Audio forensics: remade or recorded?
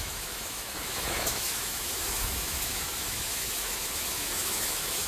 remade